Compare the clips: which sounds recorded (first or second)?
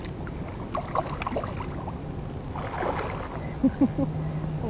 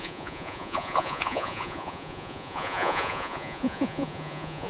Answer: first